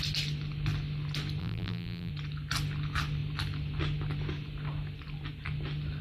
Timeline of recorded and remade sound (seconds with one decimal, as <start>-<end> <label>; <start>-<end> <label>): 0.0-1.4 recorded; 1.4-2.1 remade; 2.1-6.0 recorded